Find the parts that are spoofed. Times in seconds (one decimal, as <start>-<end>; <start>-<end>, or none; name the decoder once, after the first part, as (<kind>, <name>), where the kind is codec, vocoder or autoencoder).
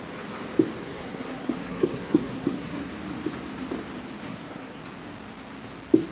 0.8-2.9 (codec, SNAC); 4.2-4.8